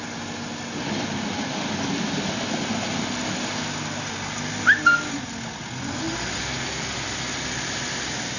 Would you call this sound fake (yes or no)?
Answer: no